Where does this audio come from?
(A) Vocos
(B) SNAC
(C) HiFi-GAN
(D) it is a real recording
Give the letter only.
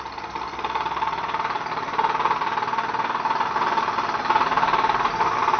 D